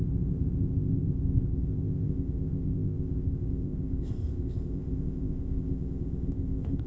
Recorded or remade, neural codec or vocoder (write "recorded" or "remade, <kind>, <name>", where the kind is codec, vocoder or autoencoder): remade, codec, ZipCodec